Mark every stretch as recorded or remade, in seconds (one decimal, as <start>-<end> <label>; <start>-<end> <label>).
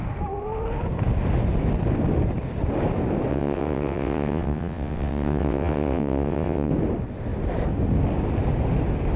0.0-3.3 recorded; 3.3-6.7 remade; 6.7-9.2 recorded